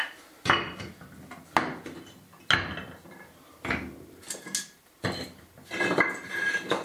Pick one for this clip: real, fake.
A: real